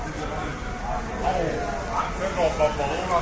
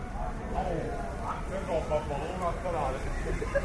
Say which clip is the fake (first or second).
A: second